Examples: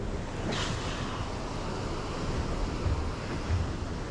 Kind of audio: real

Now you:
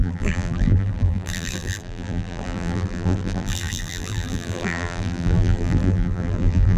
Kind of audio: fake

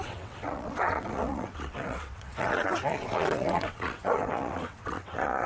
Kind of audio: fake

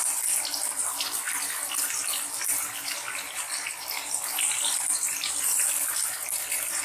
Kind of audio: real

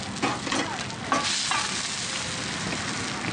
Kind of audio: real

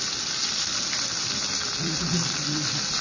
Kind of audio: fake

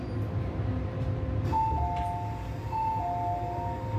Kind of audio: real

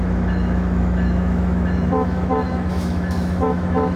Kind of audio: fake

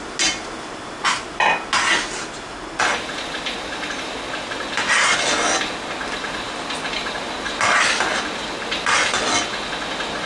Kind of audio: real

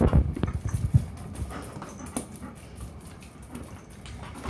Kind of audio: real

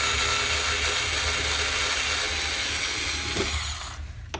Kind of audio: real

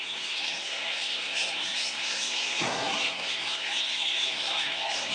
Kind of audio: fake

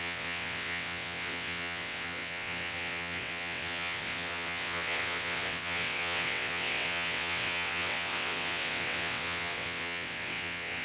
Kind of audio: fake